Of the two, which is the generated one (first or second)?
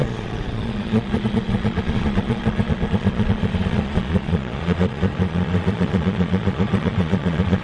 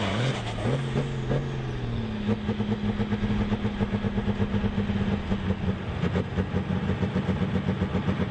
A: first